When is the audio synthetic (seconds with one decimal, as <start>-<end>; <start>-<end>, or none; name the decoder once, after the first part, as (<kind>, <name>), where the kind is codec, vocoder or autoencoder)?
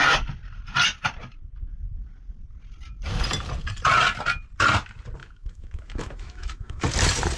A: 5.2-6.8 (autoencoder, DAC-VAE)